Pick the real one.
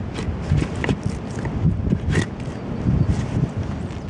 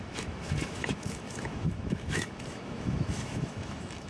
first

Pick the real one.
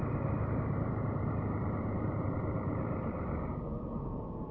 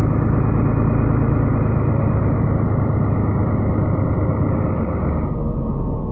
second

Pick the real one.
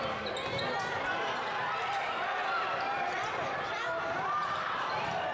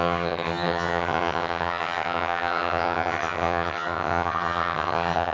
first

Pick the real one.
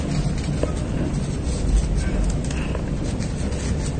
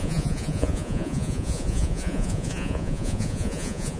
first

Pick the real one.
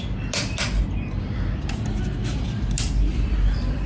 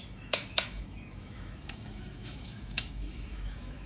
first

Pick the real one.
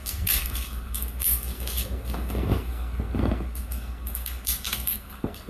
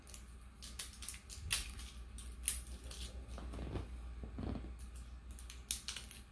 second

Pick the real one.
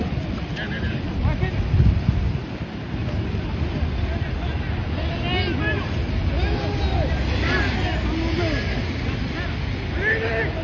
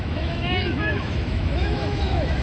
first